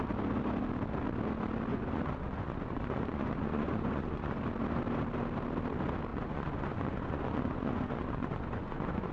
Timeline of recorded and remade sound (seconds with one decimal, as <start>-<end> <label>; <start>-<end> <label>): 0.0-1.7 recorded; 1.7-4.4 remade; 4.4-6.1 recorded; 6.1-9.1 remade